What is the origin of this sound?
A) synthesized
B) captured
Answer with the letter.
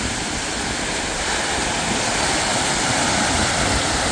B